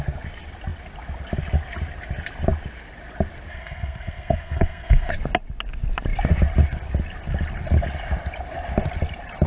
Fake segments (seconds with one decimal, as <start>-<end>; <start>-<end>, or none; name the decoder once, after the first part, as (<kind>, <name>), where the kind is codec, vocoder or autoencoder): 3.5-5.1 (codec, SNAC)